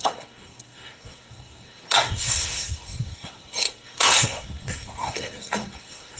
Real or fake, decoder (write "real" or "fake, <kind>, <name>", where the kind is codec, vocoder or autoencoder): fake, codec, SNAC